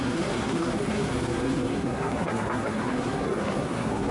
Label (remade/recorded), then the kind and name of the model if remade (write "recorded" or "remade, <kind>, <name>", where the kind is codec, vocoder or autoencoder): remade, codec, SNAC